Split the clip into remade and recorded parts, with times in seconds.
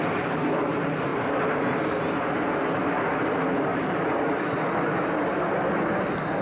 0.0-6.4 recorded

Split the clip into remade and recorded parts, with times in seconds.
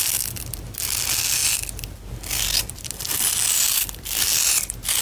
0.0-5.0 recorded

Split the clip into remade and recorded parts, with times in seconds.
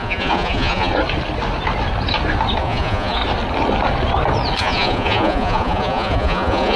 0.0-0.9 remade; 0.9-2.6 recorded; 2.6-3.2 remade; 3.2-4.6 recorded; 4.6-6.8 remade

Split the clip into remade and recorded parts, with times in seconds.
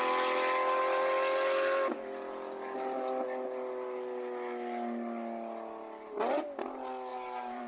0.0-7.1 recorded; 7.1-7.7 remade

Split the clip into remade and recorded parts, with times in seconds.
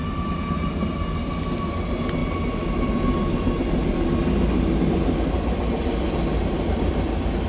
0.0-7.5 recorded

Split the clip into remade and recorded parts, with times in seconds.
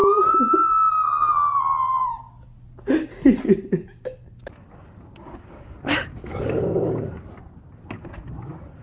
0.0-6.1 recorded; 6.1-7.3 remade; 7.3-8.8 recorded